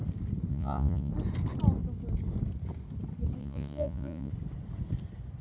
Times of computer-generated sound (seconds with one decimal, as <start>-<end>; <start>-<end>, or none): 0.5-1.1; 3.4-4.3